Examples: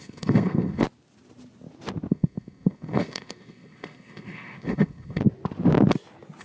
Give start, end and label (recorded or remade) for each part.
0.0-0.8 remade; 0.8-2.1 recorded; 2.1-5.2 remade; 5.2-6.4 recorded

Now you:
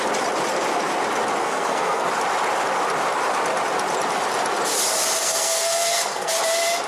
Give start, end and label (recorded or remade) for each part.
0.0-1.4 recorded; 1.4-2.1 remade; 2.1-5.2 recorded; 5.2-6.3 remade; 6.3-6.9 recorded

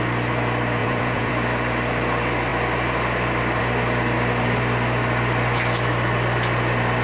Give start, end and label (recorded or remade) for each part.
0.0-0.8 recorded; 0.8-1.3 remade; 1.3-7.0 recorded